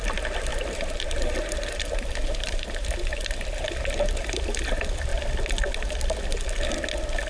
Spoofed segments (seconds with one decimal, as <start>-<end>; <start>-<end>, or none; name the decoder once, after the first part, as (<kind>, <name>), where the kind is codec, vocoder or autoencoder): 0.5-4.4 (vocoder, BigVGAN v2)